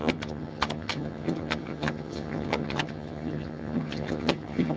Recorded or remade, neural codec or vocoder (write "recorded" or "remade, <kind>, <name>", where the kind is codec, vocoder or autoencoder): remade, vocoder, HiFi-GAN